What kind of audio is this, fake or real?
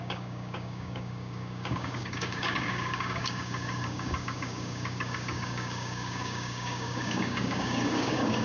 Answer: fake